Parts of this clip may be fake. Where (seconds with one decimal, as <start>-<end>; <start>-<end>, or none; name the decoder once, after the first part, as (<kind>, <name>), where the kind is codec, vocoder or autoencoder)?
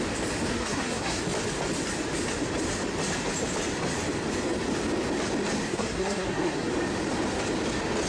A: 0.5-1.2 (codec, SNAC); 5.7-6.7